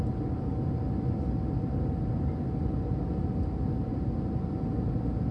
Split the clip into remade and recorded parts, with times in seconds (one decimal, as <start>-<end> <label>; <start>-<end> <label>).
0.0-5.3 recorded